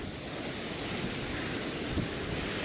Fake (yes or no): no